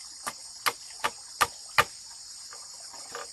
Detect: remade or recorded recorded